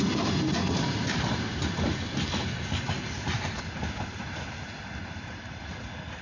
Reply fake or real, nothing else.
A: real